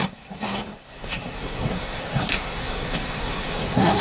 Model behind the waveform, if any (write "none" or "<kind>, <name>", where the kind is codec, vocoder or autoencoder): codec, SNAC